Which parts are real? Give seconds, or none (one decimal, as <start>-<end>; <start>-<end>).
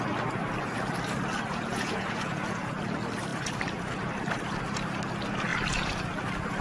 0.0-1.5; 2.8-6.6